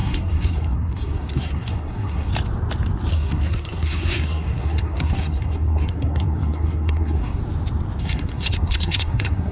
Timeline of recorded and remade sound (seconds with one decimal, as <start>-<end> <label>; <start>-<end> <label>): 0.0-2.3 remade; 2.3-3.1 recorded; 3.1-7.4 remade; 7.4-8.0 recorded; 8.0-9.5 remade